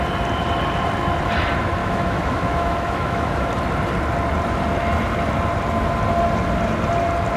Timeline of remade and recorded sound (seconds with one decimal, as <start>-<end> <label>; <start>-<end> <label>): 0.0-1.8 recorded; 1.8-3.5 remade; 3.5-7.4 recorded